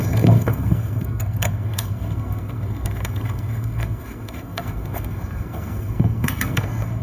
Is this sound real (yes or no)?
no